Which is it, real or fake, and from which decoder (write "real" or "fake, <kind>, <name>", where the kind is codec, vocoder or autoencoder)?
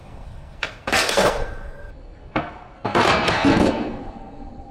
fake, codec, SNAC